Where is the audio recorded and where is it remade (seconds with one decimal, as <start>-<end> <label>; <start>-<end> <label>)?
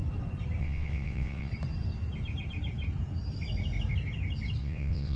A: 0.0-0.6 recorded; 0.6-1.5 remade; 1.5-4.6 recorded; 4.6-5.2 remade